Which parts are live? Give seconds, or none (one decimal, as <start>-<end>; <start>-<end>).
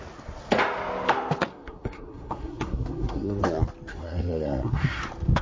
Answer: 0.0-1.5; 3.4-3.9; 5.0-5.4